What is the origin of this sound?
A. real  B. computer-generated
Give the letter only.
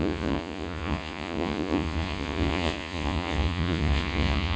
B